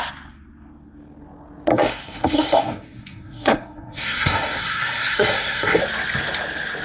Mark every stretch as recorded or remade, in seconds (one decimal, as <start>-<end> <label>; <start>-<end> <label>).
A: 0.0-1.7 recorded; 1.7-5.8 remade; 5.8-6.8 recorded